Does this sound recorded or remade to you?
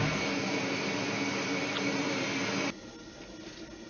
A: recorded